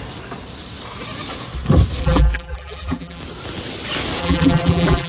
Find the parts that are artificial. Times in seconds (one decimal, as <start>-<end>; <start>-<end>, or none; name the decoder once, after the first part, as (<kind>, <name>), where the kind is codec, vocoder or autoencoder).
2.0-3.2 (vocoder, BigVGAN v2); 4.2-5.1